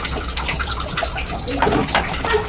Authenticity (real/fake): real